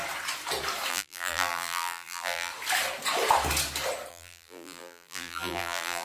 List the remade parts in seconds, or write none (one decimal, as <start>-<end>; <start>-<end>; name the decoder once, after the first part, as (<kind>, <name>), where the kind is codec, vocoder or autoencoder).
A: 0.9-2.5 (vocoder, BigVGAN v2); 4.1-6.0

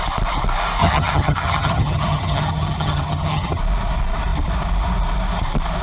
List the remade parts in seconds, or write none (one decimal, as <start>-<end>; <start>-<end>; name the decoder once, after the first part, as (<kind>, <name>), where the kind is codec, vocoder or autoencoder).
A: 0.8-3.6 (vocoder, HiFi-GAN)